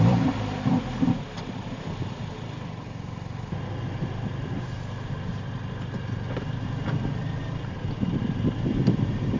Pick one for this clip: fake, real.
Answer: fake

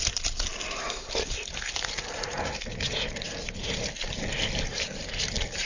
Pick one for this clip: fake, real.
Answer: real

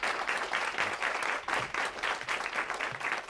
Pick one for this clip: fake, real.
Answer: real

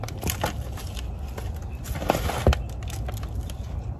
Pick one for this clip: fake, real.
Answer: real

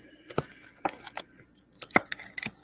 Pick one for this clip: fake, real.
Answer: fake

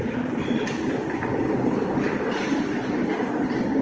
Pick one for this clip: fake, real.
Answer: fake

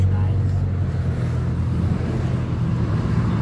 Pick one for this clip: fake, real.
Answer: real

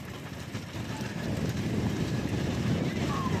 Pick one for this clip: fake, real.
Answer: fake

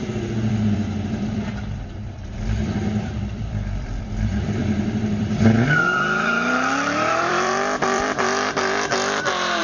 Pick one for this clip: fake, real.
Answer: fake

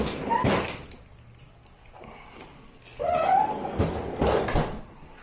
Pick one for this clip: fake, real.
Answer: real